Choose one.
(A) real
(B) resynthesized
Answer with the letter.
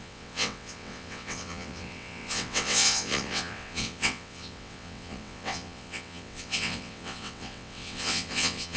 B